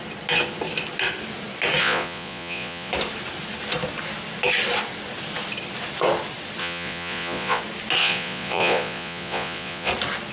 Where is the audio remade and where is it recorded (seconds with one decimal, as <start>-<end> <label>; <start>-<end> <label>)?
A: 0.0-1.8 recorded; 1.8-2.9 remade; 2.9-6.6 recorded; 6.6-7.6 remade; 7.6-8.0 recorded; 8.0-9.9 remade; 9.9-10.3 recorded